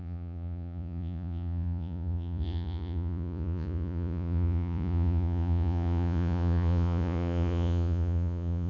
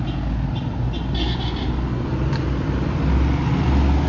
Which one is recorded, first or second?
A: second